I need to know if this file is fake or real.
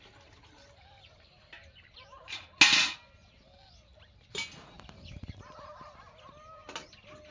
real